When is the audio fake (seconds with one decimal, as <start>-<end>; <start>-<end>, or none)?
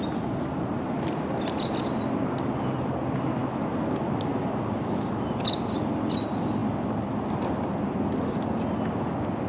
none